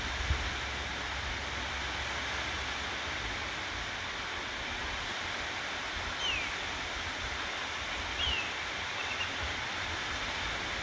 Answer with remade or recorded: recorded